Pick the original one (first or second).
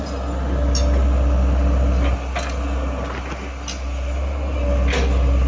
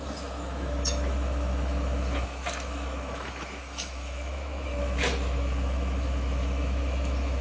first